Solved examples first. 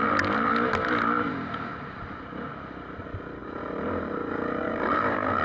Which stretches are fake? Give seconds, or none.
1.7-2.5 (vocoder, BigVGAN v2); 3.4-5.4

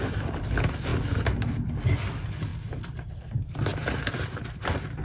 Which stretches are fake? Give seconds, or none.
2.5-3.2 (vocoder, BigVGAN v2)

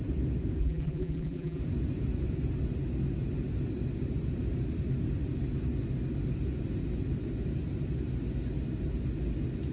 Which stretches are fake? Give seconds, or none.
0.6-1.6 (vocoder, BigVGAN v2)

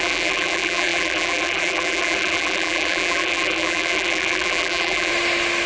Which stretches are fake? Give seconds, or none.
0.0-5.1 (vocoder, BigVGAN v2)

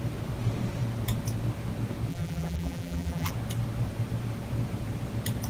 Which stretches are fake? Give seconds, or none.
2.1-3.3 (vocoder, BigVGAN v2)